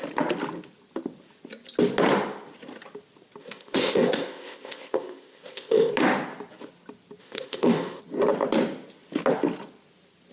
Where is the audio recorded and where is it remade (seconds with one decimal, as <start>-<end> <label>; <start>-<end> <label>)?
0.0-3.4 recorded; 3.4-5.9 remade; 5.9-7.2 recorded; 7.2-8.0 remade; 8.0-10.3 recorded